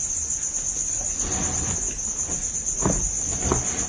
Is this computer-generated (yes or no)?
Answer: no